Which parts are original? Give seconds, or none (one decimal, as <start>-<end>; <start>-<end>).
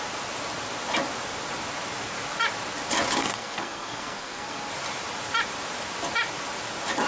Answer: 0.0-3.2; 4.7-7.1